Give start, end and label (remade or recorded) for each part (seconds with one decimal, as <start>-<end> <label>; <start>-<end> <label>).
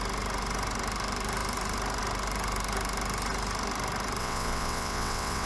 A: 0.0-4.2 recorded; 4.2-5.5 remade